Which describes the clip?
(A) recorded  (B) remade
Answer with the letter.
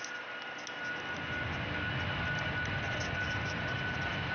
A